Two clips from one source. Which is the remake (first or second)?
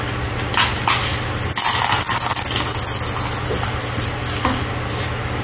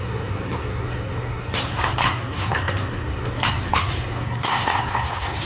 second